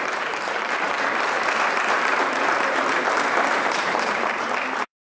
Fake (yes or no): yes